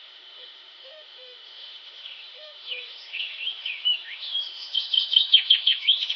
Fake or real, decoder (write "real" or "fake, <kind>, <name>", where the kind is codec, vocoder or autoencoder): fake, autoencoder, DAC-VAE